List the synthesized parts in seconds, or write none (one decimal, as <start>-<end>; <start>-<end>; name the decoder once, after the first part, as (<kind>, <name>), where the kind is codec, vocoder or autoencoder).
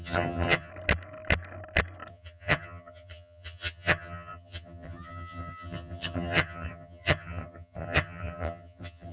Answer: 0.0-0.7 (vocoder, HiFi-GAN); 2.1-9.1